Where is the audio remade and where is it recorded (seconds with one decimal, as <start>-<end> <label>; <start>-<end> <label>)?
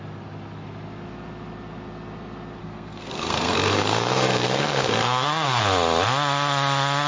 0.0-2.6 recorded; 2.6-5.6 remade; 5.6-7.1 recorded